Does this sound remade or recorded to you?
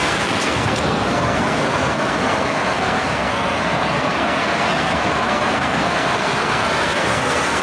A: remade